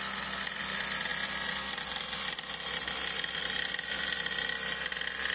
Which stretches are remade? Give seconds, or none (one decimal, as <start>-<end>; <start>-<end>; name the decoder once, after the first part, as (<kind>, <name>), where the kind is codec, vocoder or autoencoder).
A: none